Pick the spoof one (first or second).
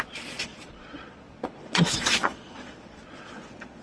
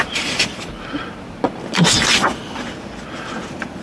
first